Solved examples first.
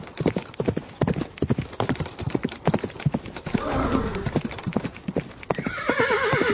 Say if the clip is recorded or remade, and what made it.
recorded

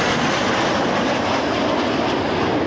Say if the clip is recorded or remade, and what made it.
recorded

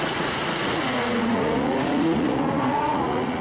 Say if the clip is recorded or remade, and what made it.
remade, vocoder, Vocos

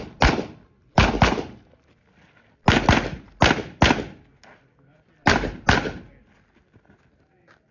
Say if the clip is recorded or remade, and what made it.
recorded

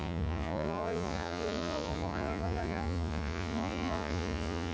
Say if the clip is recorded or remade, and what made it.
remade, vocoder, Vocos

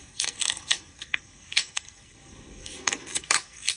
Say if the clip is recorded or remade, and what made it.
remade, codec, SNAC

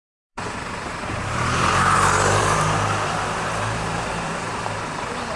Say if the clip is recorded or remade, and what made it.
remade, vocoder, BigVGAN v2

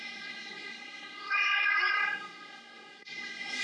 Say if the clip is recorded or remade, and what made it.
remade, codec, SNAC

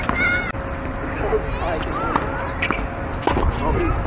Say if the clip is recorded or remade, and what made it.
recorded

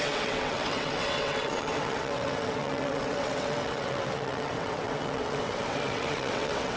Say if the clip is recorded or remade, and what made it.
remade, vocoder, WaveNeXt